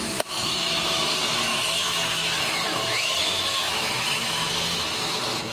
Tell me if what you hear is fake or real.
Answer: fake